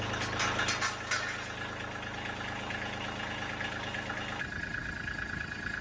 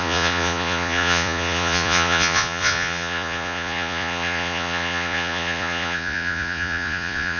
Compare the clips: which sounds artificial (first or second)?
second